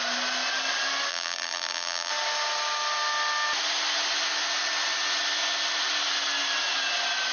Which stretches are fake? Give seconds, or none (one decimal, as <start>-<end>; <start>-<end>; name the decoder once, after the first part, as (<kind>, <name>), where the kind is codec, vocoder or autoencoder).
1.1-2.1 (vocoder, BigVGAN v2)